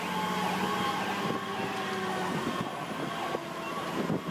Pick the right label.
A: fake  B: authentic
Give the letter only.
B